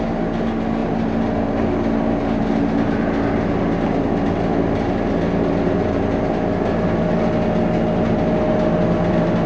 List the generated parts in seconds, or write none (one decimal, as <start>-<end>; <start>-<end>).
none